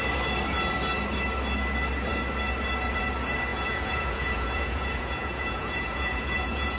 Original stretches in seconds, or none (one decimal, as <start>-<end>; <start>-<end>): 0.0-3.5